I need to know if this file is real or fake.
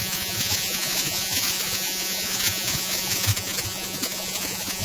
fake